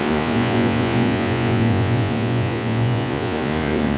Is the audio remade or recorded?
remade